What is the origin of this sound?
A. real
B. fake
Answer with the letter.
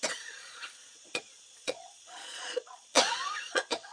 B